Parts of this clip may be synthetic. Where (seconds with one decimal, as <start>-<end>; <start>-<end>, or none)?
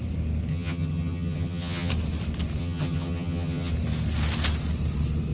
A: 0.5-1.9; 2.6-3.7